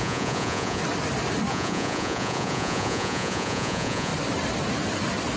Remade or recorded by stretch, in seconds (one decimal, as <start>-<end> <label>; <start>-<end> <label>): 0.0-0.8 remade; 0.8-1.5 recorded; 1.5-4.1 remade; 4.1-5.4 recorded

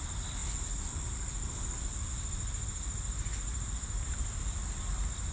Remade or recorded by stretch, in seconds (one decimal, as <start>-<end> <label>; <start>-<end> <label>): 0.0-5.3 recorded

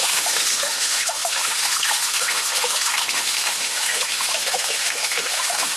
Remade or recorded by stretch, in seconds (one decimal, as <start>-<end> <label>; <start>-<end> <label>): 0.0-5.8 remade

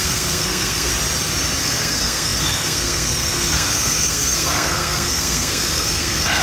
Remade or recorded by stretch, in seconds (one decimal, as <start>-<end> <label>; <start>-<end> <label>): 0.0-0.9 remade; 0.9-1.6 recorded; 1.6-6.4 remade

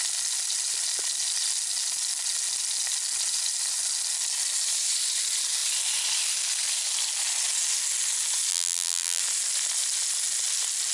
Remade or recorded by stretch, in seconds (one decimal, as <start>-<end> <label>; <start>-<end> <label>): 0.0-8.5 recorded; 8.5-9.2 remade; 9.2-10.9 recorded

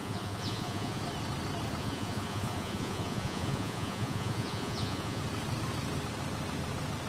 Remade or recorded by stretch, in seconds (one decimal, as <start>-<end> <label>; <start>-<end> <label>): 0.0-1.0 remade; 1.0-1.8 recorded; 1.8-5.2 remade; 5.2-7.1 recorded

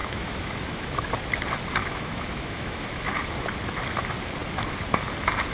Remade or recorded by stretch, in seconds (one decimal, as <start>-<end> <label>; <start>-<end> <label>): 0.0-1.1 remade; 1.1-1.8 recorded; 1.8-3.0 remade; 3.0-5.5 recorded